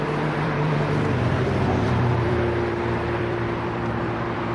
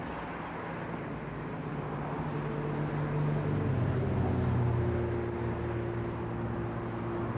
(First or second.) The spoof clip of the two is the first